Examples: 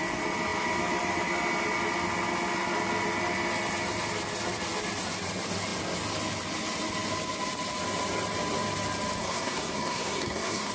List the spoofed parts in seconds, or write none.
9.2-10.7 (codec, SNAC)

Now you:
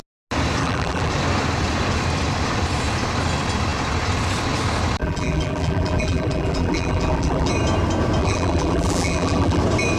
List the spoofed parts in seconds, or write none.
0.6-1.1 (vocoder, BigVGAN v2); 5.0-7.5; 8.2-9.6

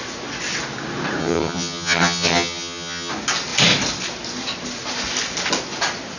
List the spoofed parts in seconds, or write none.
1.2-3.1 (vocoder, HiFi-GAN)

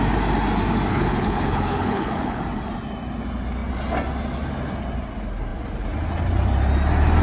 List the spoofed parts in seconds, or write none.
0.9-2.4 (codec, HILCodec)

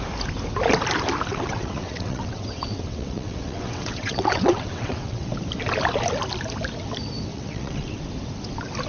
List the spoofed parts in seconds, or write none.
1.3-5.3 (vocoder, WaveNeXt); 7.3-8.0

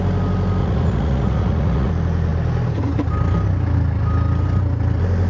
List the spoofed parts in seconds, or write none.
0.6-1.9 (vocoder, Vocos)

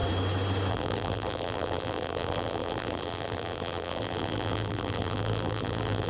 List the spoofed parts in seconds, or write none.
0.7-6.1 (vocoder, BigVGAN v2)

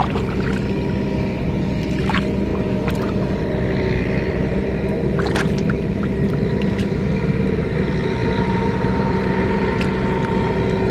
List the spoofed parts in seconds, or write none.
8.2-9.6 (vocoder, BigVGAN v2)